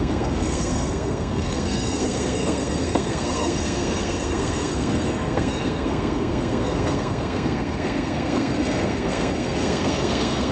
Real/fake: fake